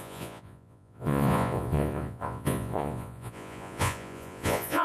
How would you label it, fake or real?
fake